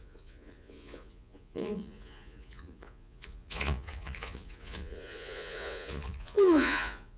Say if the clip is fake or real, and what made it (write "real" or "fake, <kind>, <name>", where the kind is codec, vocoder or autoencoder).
fake, vocoder, Vocos